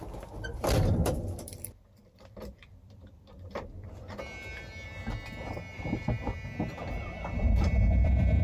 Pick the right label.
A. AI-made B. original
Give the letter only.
A